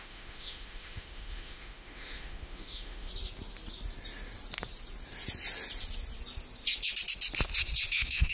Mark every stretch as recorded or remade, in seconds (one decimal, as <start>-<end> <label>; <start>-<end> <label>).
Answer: 0.0-3.1 remade; 3.1-7.9 recorded; 7.9-8.3 remade